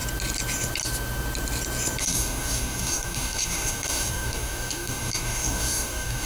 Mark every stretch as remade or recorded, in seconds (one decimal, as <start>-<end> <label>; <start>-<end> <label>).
0.0-2.0 recorded; 2.0-6.3 remade